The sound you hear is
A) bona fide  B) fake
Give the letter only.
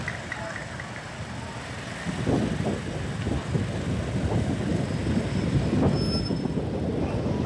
A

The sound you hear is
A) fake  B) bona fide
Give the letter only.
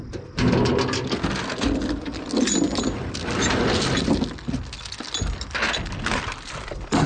B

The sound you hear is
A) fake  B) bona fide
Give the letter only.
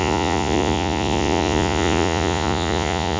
A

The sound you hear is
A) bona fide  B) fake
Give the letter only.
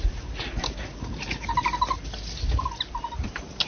A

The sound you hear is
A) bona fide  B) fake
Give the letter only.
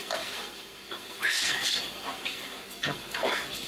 B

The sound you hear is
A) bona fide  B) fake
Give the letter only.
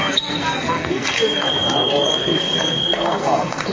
B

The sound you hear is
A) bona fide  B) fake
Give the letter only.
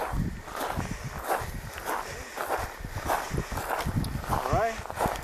A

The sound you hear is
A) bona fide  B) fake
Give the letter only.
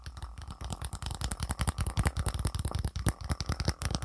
A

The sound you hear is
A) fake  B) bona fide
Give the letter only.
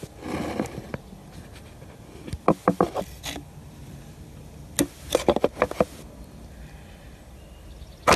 B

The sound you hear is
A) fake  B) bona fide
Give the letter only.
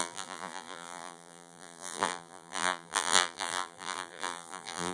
A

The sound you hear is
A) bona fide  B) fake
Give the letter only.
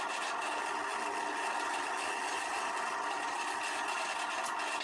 A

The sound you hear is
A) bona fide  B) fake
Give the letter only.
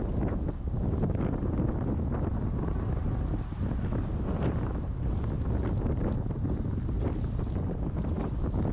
A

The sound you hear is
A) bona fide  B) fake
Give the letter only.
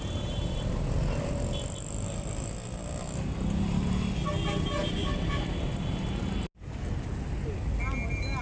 A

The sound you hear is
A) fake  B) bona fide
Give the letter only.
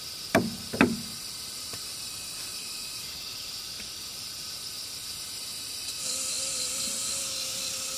A